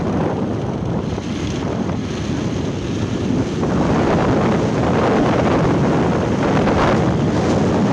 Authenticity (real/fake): real